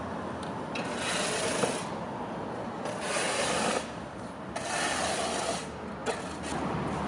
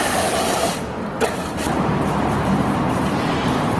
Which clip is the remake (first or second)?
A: second